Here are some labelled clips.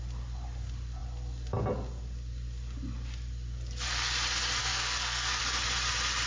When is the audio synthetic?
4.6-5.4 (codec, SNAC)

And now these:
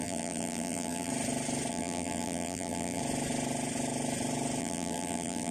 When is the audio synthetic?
0.0-1.1 (vocoder, BigVGAN v2); 1.7-3.0; 4.6-5.5

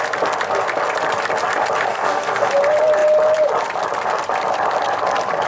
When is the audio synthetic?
1.9-2.5 (codec, SNAC)

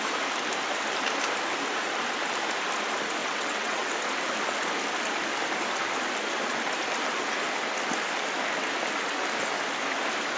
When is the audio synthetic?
3.2-3.9 (vocoder, WaveNeXt)

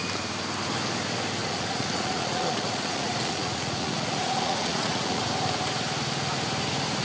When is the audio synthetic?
1.4-5.3 (vocoder, Vocos)

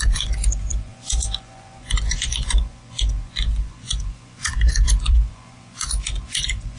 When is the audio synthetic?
0.0-6.8 (vocoder, Vocos)